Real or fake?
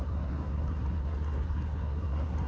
fake